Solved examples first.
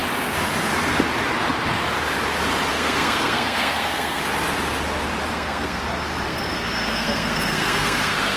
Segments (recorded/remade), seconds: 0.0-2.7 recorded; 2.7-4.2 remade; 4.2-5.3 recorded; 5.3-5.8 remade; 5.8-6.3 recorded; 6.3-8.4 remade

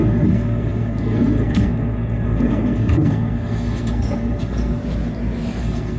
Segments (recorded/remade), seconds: 0.0-4.8 remade; 4.8-5.6 recorded; 5.6-6.0 remade

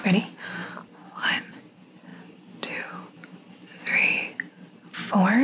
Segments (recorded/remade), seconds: 0.0-5.4 recorded

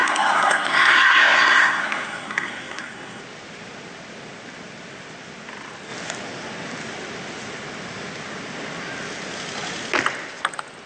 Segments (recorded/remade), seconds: 0.0-3.2 remade; 3.2-10.9 recorded

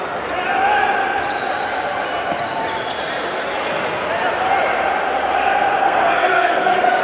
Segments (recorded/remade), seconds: 0.0-5.8 recorded; 5.8-7.0 remade

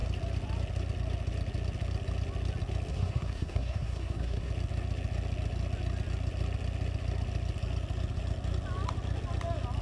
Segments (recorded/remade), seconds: 0.0-2.9 recorded; 2.9-4.5 remade; 4.5-9.8 recorded

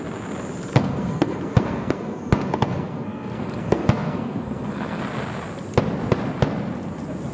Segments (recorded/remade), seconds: 0.0-0.7 recorded; 0.7-5.0 remade; 5.0-7.3 recorded

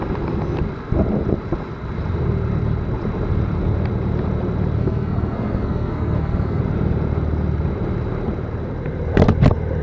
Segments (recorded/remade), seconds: 0.0-4.8 recorded; 4.8-6.6 remade; 6.6-9.8 recorded